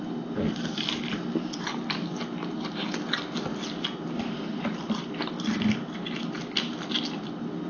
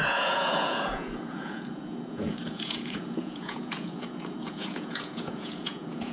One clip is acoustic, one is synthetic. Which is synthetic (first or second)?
second